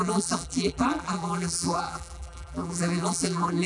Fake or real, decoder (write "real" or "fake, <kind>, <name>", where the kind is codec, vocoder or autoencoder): fake, vocoder, BigVGAN v2